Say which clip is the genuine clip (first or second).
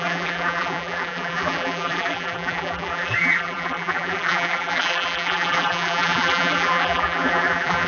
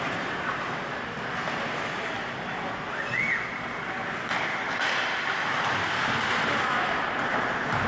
second